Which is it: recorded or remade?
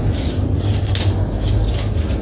recorded